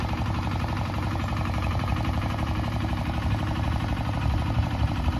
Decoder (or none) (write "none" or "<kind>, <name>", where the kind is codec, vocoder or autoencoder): vocoder, BigVGAN v2